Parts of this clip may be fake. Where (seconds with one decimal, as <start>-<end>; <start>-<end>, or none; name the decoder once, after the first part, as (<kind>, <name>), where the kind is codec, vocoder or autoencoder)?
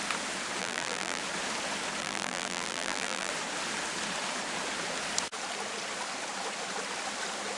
0.6-1.2 (vocoder, BigVGAN v2); 2.0-3.3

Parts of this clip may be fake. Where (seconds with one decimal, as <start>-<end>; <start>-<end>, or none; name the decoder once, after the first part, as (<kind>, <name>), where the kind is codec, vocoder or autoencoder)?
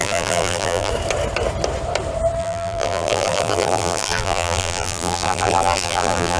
0.0-0.9 (vocoder, BigVGAN v2); 2.4-6.4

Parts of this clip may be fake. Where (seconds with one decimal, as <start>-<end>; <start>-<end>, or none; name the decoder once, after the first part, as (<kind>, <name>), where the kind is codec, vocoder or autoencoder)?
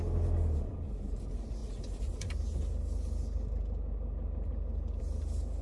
none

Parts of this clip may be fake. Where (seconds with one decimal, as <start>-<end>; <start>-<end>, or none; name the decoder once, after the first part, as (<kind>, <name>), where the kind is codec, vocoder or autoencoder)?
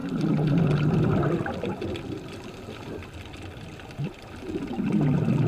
0.0-2.5 (vocoder, BigVGAN v2); 2.9-4.2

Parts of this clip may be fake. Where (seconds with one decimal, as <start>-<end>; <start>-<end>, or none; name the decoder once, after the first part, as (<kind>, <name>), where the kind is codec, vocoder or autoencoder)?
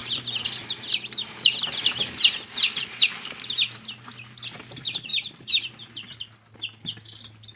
0.0-0.8 (vocoder, BigVGAN v2); 5.1-5.8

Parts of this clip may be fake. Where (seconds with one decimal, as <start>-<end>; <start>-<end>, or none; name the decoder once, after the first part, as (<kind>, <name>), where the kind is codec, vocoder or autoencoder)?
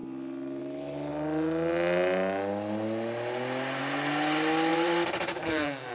4.7-5.9 (vocoder, BigVGAN v2)